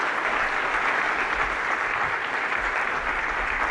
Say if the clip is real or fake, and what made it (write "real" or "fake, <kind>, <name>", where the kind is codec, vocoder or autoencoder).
real